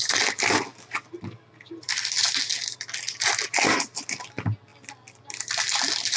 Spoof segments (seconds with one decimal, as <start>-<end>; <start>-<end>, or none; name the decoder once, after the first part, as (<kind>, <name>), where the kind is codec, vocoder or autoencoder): none